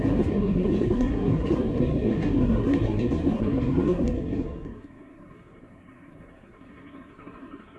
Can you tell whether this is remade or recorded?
remade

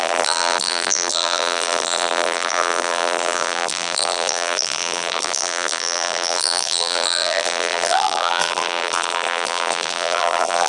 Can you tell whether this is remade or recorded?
remade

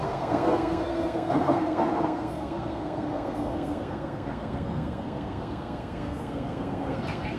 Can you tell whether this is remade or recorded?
remade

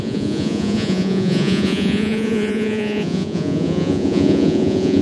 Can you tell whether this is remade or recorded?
remade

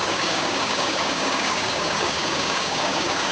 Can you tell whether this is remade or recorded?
remade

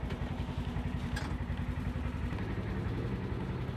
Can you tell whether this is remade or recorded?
recorded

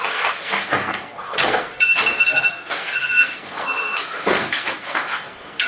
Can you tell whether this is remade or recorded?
remade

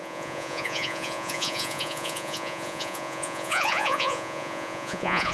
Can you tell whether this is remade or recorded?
remade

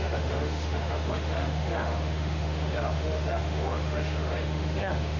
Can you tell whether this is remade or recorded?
remade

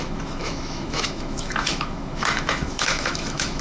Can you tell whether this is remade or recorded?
remade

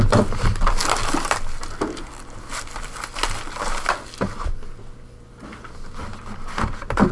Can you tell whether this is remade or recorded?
recorded